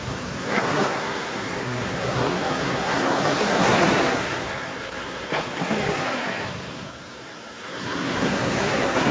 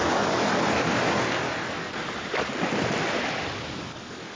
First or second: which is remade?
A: first